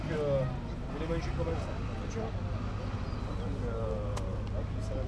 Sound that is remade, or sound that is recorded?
recorded